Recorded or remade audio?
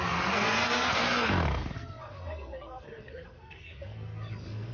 remade